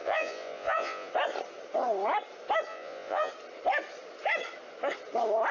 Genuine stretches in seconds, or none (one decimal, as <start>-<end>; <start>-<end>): 1.1-2.7; 3.3-5.5